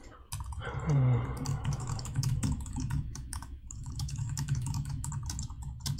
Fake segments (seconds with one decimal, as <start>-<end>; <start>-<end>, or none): 1.5-5.1